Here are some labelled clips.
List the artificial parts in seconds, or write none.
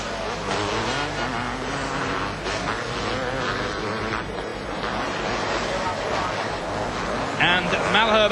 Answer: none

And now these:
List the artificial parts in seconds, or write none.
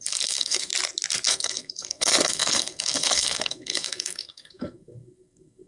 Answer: 0.0-0.7 (codec, SNAC); 1.3-5.7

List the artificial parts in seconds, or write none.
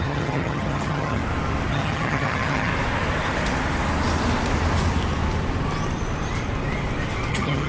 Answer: 0.0-1.2 (vocoder, HiFi-GAN); 1.7-2.7; 7.3-7.7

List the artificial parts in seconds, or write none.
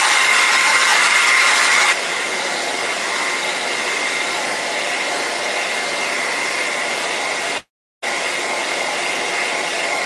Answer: none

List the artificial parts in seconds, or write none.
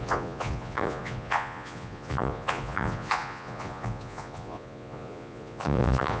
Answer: 0.0-6.2 (vocoder, Vocos)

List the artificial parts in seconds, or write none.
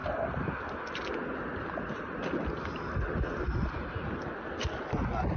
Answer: none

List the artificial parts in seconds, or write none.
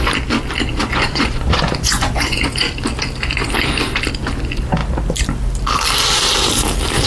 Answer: 0.7-2.6 (vocoder, Vocos)